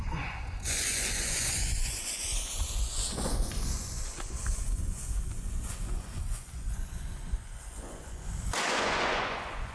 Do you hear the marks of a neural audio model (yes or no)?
yes